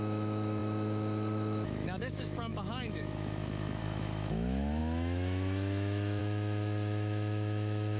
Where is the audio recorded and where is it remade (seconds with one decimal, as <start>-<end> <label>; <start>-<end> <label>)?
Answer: 0.0-8.0 remade